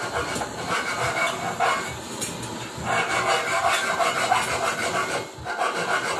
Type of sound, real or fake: real